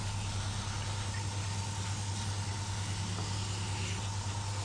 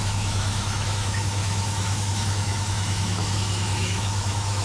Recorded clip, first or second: first